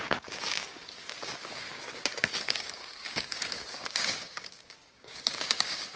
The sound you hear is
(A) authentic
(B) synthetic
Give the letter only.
B